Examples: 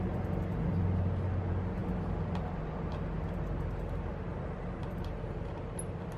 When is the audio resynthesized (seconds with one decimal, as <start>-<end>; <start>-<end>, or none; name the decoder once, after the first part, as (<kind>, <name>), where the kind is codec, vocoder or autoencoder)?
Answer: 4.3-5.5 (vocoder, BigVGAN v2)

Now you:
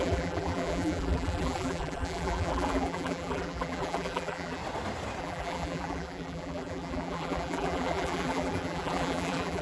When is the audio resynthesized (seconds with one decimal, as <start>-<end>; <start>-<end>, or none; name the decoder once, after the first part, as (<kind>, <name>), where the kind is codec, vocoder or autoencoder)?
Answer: 0.0-4.6 (vocoder, BigVGAN v2); 5.2-9.6

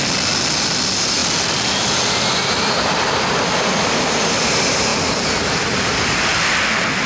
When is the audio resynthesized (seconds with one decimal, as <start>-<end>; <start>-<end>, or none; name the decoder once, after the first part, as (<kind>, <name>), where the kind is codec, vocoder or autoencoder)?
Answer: 4.9-5.5 (vocoder, BigVGAN v2)

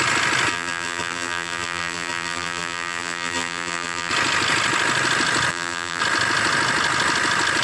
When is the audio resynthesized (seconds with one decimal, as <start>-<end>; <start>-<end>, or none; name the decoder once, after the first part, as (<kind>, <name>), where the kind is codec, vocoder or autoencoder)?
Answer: 0.5-4.1 (vocoder, BigVGAN v2); 5.5-6.0

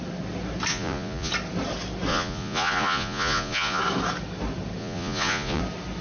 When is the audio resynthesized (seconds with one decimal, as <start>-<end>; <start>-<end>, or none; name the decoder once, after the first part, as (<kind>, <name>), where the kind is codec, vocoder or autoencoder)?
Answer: 0.7-1.3 (vocoder, Vocos); 2.1-3.8; 4.8-5.6

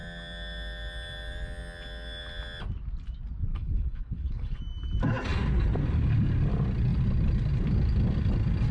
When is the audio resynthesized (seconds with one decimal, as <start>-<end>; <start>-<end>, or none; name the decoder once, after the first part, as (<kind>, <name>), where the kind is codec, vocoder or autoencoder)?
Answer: 3.5-4.6 (codec, HILCodec)

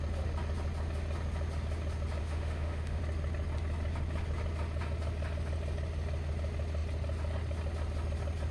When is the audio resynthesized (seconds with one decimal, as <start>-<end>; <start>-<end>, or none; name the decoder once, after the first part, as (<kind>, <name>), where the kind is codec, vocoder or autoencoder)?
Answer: 2.2-3.0 (autoencoder, DAC-VAE)